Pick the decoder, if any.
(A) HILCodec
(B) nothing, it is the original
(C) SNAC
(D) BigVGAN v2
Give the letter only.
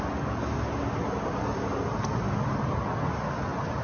B